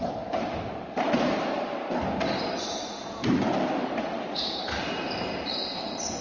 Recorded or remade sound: remade